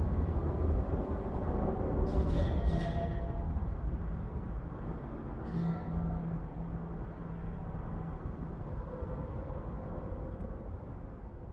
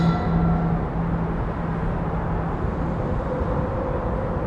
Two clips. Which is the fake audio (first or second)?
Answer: first